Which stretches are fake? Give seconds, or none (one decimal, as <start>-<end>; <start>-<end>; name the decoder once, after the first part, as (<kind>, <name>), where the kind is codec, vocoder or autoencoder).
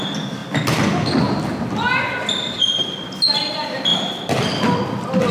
3.9-4.8 (vocoder, BigVGAN v2)